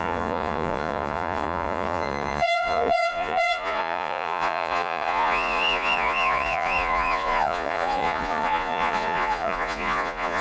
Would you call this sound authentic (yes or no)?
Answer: no